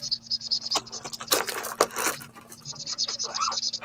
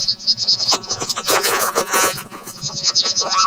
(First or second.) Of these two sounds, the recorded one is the first